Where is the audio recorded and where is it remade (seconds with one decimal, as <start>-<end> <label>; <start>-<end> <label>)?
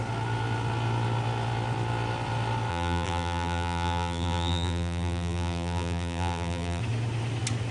0.0-2.7 recorded; 2.7-6.8 remade; 6.8-7.7 recorded